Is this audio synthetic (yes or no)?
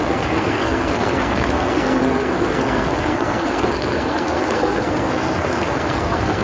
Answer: yes